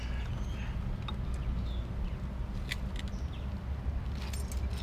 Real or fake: real